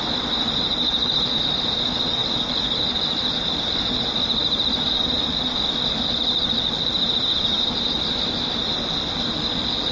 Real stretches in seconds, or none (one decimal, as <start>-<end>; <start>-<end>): 0.0-9.9